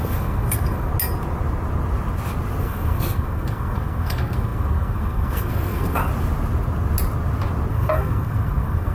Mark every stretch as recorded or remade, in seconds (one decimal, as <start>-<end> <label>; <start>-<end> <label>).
0.0-0.9 remade; 0.9-2.6 recorded; 2.6-6.1 remade; 6.1-7.7 recorded; 7.7-8.9 remade